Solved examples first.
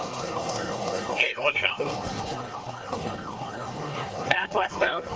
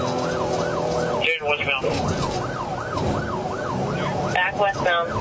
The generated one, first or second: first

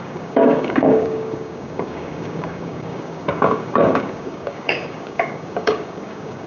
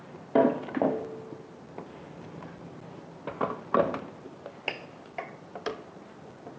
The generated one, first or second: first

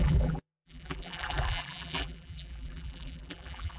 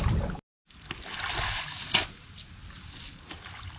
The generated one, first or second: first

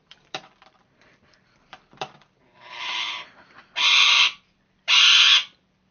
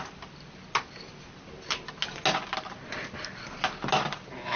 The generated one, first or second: first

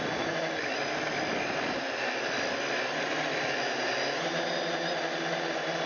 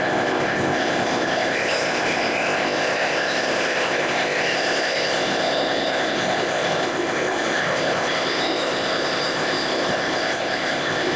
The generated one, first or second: second